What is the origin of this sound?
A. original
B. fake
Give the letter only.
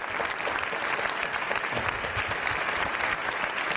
A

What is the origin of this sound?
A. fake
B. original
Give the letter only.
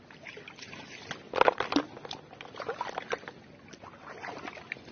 B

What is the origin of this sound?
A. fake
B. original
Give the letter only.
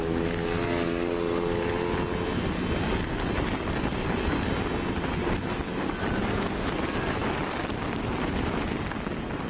B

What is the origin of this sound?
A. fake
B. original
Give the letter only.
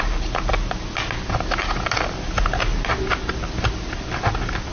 B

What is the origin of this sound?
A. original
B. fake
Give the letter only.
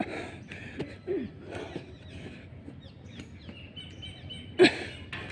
A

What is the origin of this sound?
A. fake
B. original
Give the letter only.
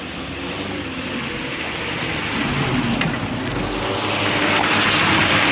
B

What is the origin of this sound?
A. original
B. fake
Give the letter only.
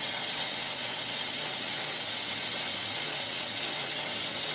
B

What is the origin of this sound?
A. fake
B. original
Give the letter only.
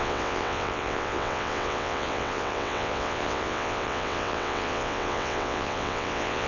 A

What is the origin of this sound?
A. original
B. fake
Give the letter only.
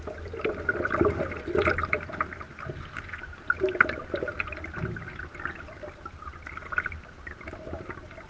A